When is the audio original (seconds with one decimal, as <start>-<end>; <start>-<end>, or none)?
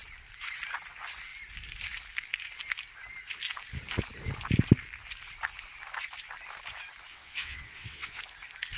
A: 0.0-7.1; 8.2-8.8